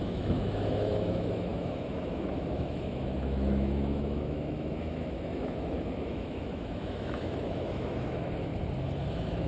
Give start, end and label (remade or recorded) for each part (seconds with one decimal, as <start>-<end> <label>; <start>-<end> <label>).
0.0-8.5 remade; 8.5-9.1 recorded; 9.1-9.5 remade